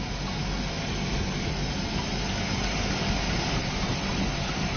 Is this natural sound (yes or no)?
yes